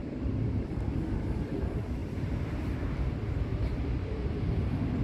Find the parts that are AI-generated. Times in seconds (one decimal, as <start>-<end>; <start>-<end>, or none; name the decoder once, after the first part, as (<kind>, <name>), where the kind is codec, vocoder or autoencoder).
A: 0.0-0.7 (vocoder, BigVGAN v2); 2.0-3.1; 3.5-4.4

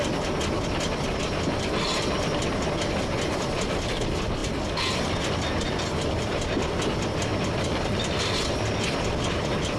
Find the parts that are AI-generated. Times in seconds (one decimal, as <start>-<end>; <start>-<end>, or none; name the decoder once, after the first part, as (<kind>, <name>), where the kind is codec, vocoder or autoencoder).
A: none

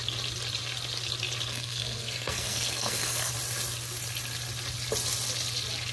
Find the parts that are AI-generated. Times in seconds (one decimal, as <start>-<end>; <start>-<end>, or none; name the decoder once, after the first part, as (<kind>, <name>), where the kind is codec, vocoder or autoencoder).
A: 1.5-3.3 (codec, SNAC)

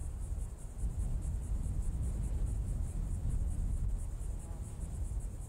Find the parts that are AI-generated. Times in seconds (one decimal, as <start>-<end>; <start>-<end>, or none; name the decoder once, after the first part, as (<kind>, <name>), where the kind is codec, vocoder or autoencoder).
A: 0.0-3.3 (vocoder, BigVGAN v2)

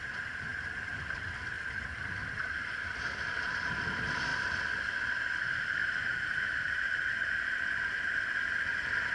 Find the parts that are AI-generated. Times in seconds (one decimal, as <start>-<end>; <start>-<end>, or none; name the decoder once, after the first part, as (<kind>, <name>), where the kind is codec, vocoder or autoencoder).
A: none

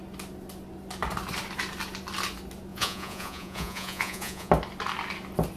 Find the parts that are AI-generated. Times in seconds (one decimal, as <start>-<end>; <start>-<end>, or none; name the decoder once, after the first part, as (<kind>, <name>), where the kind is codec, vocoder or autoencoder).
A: 2.7-4.5 (vocoder, Vocos)